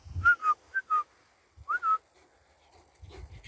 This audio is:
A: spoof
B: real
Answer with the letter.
B